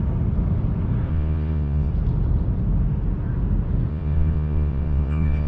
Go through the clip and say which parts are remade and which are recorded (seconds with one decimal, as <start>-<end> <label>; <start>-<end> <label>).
0.0-1.1 recorded; 1.1-1.9 remade; 1.9-3.9 recorded; 3.9-5.5 remade